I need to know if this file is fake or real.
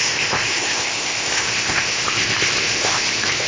fake